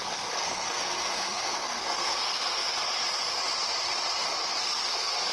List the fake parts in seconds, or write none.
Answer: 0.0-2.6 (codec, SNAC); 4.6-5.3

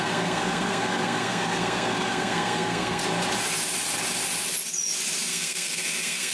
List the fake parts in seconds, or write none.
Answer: 0.0-3.0 (codec, SNAC); 5.3-6.3

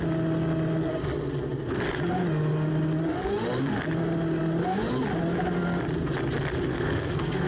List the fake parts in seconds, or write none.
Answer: 6.7-7.5 (codec, SNAC)

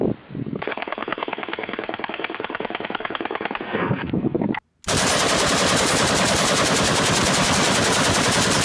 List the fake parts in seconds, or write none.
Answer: 0.4-4.5 (codec, SNAC)

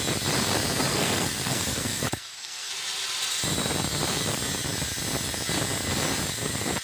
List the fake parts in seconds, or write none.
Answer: 0.9-2.7 (codec, SNAC)

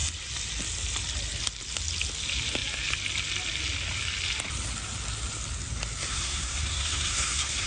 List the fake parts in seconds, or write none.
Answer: 6.1-7.7 (codec, SNAC)

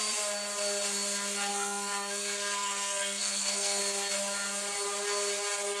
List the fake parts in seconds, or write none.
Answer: 1.5-3.8 (codec, SNAC)

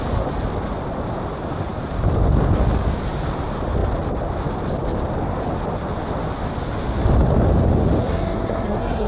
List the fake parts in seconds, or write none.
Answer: 8.0-9.1 (codec, SNAC)